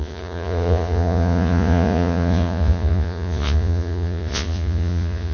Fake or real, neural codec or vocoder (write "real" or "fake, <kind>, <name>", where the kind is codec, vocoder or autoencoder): fake, vocoder, Vocos